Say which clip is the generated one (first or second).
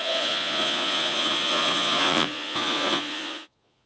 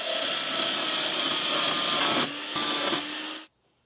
first